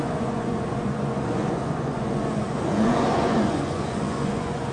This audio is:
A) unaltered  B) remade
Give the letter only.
B